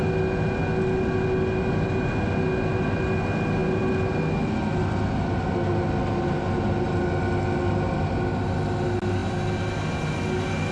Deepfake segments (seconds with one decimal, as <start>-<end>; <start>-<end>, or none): none